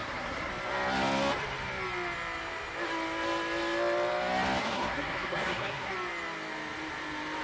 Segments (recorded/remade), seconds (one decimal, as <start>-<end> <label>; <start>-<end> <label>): 0.0-0.5 remade; 0.5-4.6 recorded; 4.6-5.9 remade; 5.9-7.4 recorded